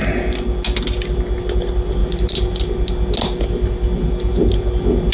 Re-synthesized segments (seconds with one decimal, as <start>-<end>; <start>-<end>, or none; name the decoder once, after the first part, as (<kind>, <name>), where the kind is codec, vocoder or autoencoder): 2.0-2.6 (vocoder, BigVGAN v2)